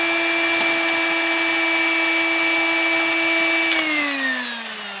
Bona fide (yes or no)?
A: yes